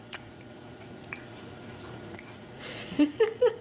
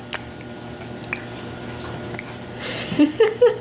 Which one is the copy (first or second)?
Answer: first